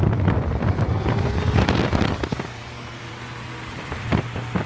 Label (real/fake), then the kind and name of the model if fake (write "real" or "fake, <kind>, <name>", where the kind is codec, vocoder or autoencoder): fake, vocoder, BigVGAN v2